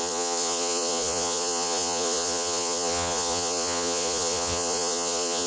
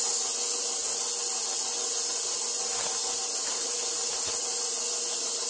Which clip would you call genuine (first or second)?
second